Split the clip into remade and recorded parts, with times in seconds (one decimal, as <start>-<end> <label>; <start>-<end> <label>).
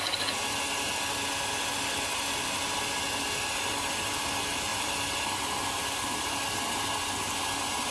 0.0-4.7 recorded; 4.7-5.9 remade; 5.9-7.9 recorded